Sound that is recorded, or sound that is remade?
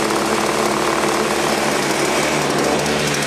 recorded